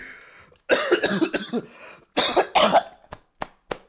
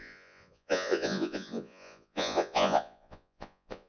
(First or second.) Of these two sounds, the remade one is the second